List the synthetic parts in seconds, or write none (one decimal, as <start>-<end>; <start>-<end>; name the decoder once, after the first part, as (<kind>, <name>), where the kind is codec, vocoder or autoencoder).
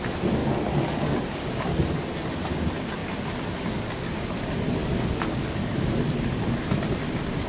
0.4-1.7 (codec, DAC); 4.8-6.0